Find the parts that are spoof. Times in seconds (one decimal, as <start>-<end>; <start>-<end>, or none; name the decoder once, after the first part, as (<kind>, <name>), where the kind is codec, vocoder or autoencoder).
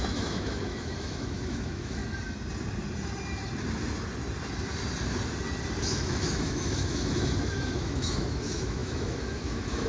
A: 0.0-2.0 (autoencoder, DAC-VAE); 5.8-9.9